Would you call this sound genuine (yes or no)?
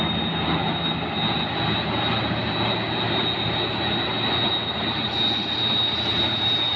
yes